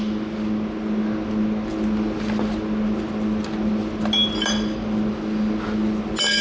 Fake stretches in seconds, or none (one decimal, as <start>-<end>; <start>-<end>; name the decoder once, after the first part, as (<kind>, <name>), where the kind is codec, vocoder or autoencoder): none